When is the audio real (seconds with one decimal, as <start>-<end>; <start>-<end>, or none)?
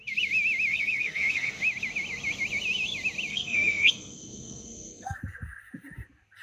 0.0-0.7; 1.5-3.3; 5.2-6.4